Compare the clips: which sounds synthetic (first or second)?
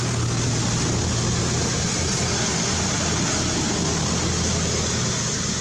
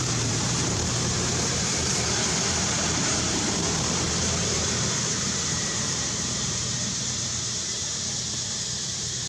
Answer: second